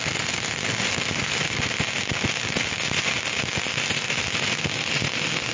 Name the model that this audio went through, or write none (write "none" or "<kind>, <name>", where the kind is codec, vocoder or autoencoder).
none